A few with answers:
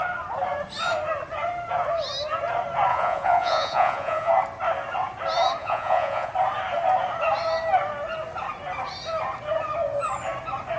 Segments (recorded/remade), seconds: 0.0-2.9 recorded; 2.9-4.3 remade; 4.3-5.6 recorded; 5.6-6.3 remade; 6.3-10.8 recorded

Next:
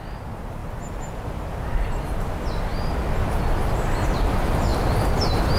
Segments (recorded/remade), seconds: 0.0-0.6 recorded; 0.6-1.8 remade; 1.8-2.7 recorded; 2.7-3.4 remade; 3.4-5.6 recorded

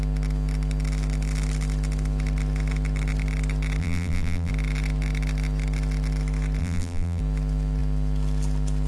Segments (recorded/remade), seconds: 0.0-3.8 recorded; 3.8-4.5 remade; 4.5-6.6 recorded; 6.6-7.2 remade; 7.2-8.9 recorded

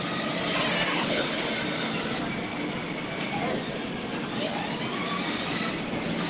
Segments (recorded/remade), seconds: 0.0-0.9 recorded; 0.9-1.5 remade; 1.5-6.3 recorded

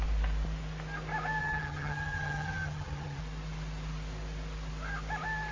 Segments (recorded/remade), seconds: 0.0-1.4 recorded; 1.4-3.2 remade; 3.2-5.5 recorded